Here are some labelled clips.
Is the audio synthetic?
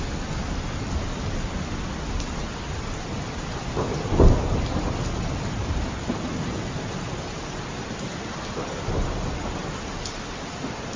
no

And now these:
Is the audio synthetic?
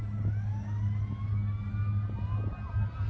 no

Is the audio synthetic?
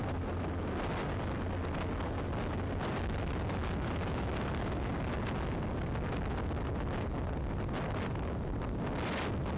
no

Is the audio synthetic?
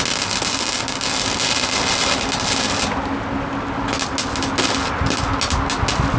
no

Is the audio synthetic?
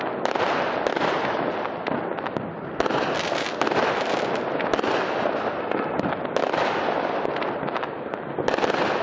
no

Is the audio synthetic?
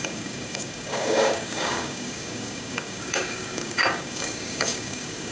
yes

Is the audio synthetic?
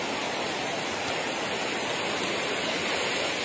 no